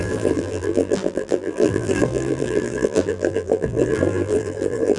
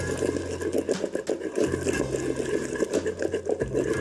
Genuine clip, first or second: second